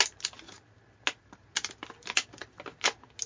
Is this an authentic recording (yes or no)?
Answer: yes